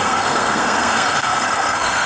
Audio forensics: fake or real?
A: fake